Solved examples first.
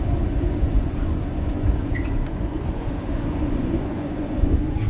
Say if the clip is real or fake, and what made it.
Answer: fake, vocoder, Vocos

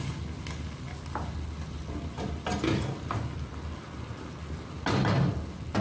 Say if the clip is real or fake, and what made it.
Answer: real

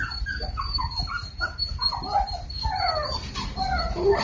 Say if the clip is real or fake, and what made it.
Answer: real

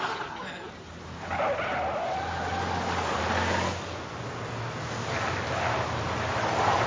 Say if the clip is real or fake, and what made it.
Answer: real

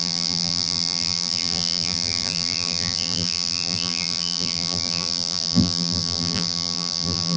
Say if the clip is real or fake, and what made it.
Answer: fake, vocoder, BigVGAN v2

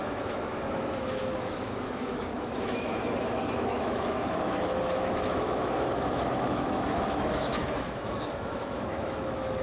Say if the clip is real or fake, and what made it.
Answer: fake, autoencoder, DAC-VAE